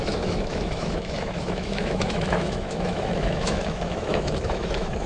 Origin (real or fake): fake